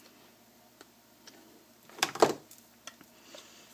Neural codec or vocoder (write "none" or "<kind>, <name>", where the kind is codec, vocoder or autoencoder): none